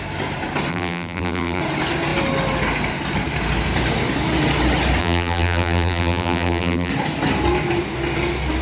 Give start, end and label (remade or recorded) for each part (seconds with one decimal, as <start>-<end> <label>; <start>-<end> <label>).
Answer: 0.0-0.7 recorded; 0.7-1.6 remade; 1.6-5.0 recorded; 5.0-6.9 remade; 6.9-8.6 recorded